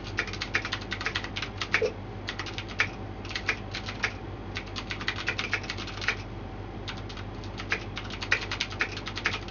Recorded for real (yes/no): yes